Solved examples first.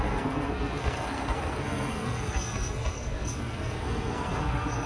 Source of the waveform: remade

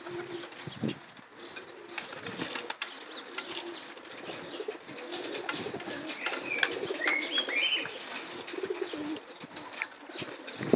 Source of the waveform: recorded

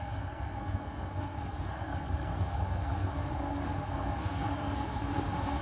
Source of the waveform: remade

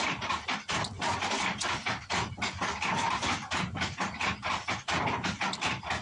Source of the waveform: recorded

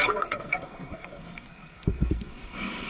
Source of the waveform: remade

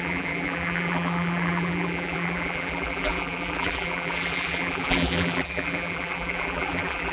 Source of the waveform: remade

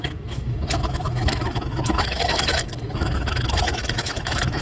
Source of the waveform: remade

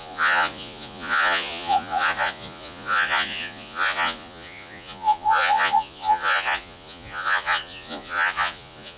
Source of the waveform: remade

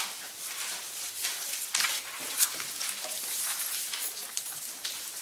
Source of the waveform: recorded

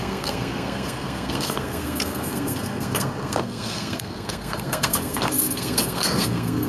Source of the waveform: remade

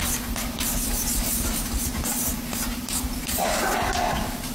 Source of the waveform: remade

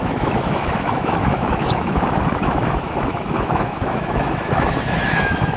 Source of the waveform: remade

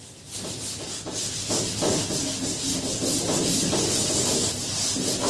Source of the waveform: recorded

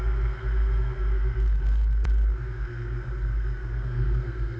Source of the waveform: remade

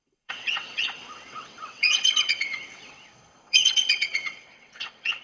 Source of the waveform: remade